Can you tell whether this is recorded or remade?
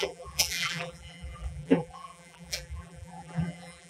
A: remade